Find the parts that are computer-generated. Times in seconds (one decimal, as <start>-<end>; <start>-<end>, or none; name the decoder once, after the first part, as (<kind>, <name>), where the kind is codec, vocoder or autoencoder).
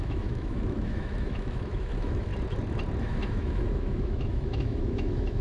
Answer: 0.0-2.3 (autoencoder, DAC-VAE); 3.0-5.4